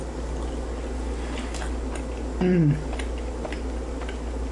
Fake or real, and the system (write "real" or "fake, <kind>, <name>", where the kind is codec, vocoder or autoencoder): real